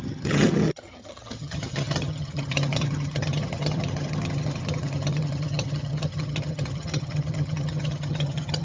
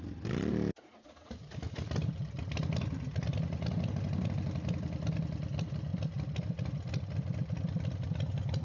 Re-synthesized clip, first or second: first